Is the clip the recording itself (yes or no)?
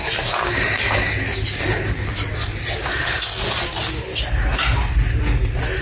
yes